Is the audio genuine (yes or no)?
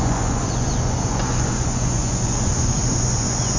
no